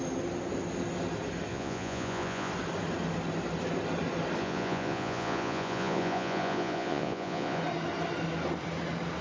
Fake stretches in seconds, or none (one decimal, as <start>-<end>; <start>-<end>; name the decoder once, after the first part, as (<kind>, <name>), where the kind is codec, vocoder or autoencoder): 1.5-2.5 (vocoder, Vocos); 4.4-7.6